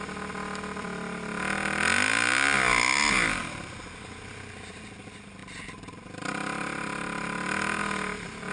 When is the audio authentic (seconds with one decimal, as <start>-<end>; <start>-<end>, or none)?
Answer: 0.0-8.5